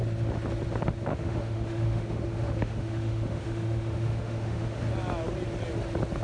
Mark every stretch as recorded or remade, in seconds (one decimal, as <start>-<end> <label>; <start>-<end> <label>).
0.0-1.1 recorded; 1.1-4.8 remade; 4.8-6.2 recorded